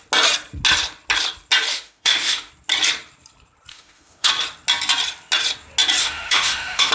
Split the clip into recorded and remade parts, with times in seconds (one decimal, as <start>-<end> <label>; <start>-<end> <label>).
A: 0.0-1.7 recorded; 1.7-2.5 remade; 2.5-3.7 recorded; 3.7-4.3 remade; 4.3-6.0 recorded; 6.0-6.9 remade